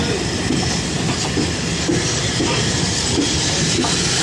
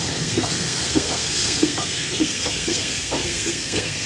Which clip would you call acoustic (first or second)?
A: first